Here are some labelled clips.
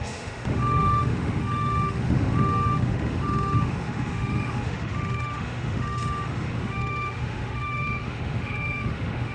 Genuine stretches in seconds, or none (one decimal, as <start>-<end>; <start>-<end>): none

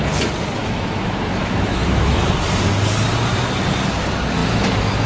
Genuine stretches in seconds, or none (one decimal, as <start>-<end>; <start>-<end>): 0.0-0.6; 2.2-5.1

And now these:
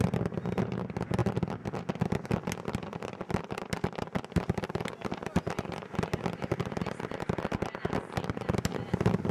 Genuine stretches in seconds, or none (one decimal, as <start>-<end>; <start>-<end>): 0.0-9.3

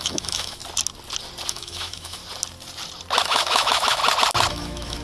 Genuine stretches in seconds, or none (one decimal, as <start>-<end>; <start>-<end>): 0.6-1.5; 2.2-3.2; 4.0-4.5

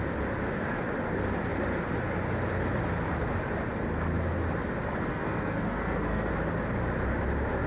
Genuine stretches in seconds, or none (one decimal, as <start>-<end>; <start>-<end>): 0.0-5.1; 6.3-7.7

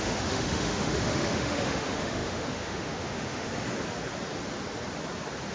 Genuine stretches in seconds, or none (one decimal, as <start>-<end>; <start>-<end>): 3.5-5.5

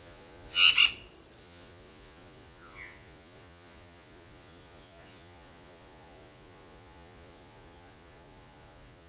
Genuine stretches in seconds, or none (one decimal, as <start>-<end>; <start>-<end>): 0.7-1.4

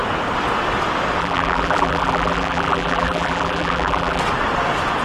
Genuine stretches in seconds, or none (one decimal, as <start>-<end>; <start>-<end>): 0.0-1.2; 4.2-5.0